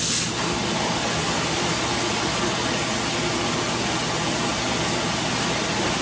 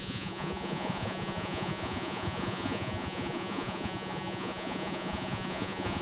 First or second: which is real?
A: first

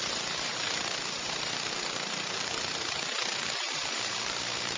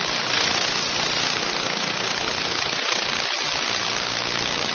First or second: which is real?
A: second